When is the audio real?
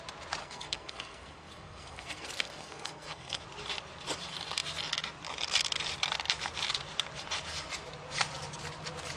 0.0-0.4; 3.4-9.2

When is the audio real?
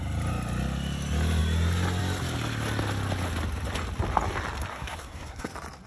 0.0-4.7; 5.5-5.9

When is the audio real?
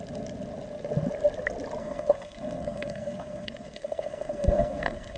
0.0-1.8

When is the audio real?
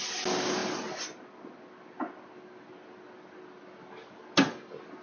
0.0-5.0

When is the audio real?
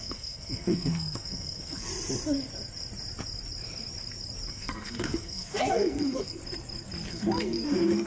1.9-4.5; 6.4-7.1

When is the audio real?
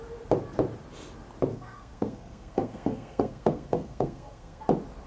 0.0-1.5; 4.6-5.1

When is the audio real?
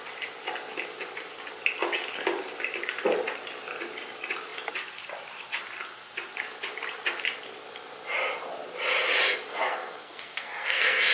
0.0-9.5